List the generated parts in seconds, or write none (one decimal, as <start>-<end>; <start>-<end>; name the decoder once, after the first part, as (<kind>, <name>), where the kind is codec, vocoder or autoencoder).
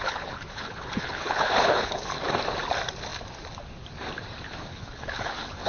0.0-2.3 (codec, HILCodec); 4.7-5.7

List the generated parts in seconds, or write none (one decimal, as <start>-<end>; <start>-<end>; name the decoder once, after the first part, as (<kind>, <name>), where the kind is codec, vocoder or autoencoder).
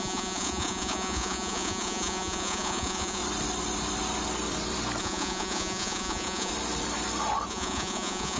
0.0-3.2 (vocoder, Vocos); 5.0-6.5; 7.5-8.4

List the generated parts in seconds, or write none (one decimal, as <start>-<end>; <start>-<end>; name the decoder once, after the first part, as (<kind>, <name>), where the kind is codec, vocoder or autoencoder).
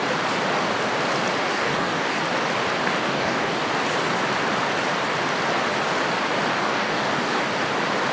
1.5-2.2 (codec, DAC); 3.0-3.6; 6.5-7.4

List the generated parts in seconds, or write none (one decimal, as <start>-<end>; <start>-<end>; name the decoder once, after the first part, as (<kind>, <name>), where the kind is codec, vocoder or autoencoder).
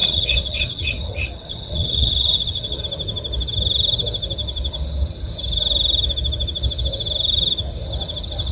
0.0-2.8 (vocoder, WaveNeXt)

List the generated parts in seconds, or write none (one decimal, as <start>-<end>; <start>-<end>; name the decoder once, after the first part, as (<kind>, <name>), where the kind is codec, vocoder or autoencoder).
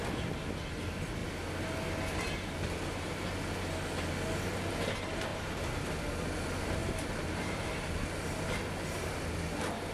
5.3-6.1 (vocoder, BigVGAN v2); 6.8-9.1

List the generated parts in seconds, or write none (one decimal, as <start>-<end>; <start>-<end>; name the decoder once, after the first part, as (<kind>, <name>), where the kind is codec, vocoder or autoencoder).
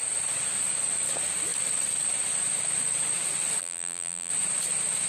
3.6-4.3 (vocoder, BigVGAN v2)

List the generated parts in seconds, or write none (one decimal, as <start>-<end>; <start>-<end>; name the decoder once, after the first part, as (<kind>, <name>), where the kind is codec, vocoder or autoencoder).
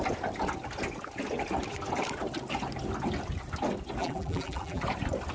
4.0-4.8 (vocoder, BigVGAN v2)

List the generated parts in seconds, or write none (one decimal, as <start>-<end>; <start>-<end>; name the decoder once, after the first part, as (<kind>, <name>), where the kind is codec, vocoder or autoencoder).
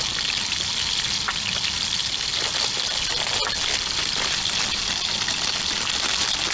none